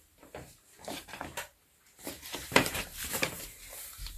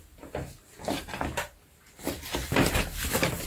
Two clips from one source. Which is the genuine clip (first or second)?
second